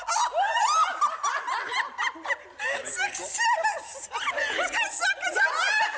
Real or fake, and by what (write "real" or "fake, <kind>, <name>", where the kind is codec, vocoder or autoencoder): real